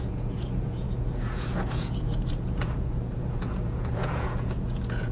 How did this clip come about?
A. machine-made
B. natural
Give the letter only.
A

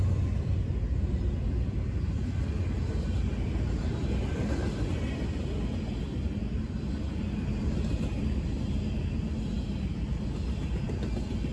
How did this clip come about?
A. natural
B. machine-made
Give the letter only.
A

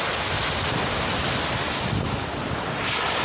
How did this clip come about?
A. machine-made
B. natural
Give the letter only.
B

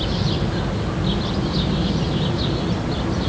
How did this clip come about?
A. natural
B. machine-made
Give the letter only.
A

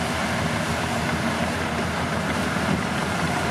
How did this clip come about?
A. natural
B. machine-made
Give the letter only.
B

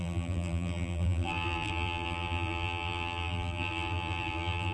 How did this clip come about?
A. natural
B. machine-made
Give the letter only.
B